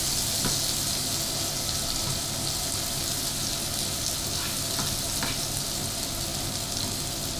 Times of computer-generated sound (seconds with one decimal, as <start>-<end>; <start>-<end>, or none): none